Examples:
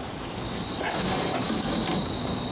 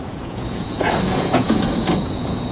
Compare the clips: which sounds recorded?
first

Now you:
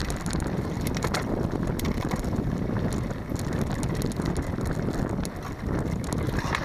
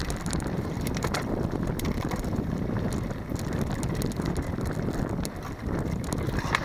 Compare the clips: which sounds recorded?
first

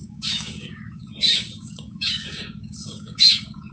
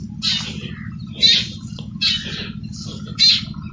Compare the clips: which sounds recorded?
second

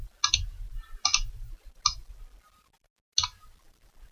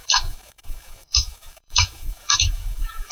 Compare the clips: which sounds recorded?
first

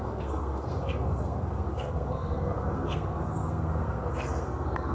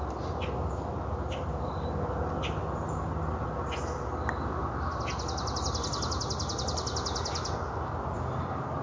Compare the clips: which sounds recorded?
second